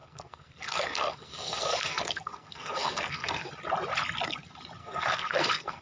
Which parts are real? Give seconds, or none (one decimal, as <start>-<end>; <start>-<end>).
3.5-4.8